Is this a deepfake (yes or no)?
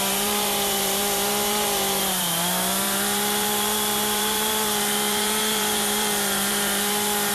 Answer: yes